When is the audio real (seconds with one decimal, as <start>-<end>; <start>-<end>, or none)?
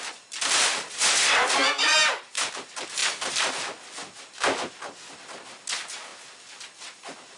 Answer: 0.0-7.4